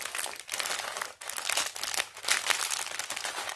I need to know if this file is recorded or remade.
recorded